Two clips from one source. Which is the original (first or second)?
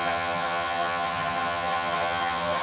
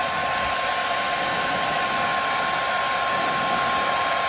second